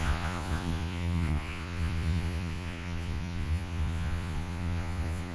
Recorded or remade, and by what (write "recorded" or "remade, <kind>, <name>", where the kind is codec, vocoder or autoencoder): remade, vocoder, Vocos